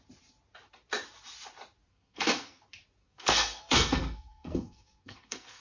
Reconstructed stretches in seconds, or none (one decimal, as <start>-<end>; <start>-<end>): 1.9-2.6; 3.0-5.6